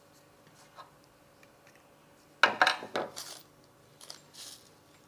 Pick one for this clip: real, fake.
real